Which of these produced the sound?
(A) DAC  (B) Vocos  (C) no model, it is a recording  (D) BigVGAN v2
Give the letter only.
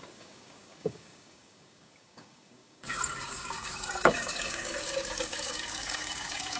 A